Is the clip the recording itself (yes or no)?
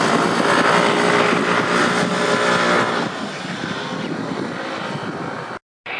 yes